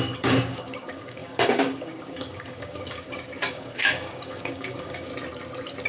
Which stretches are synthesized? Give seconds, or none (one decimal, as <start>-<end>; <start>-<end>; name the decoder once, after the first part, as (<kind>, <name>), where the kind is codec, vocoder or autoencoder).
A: 0.0-5.1 (codec, DAC)